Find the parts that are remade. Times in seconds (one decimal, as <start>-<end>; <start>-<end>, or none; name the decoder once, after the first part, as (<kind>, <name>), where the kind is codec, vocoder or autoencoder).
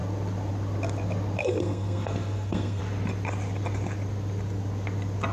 1.4-2.8 (codec, SNAC)